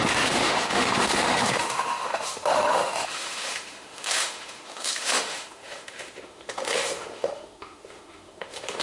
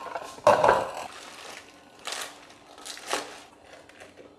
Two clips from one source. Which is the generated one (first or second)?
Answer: first